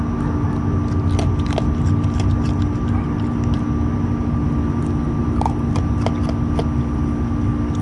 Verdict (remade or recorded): recorded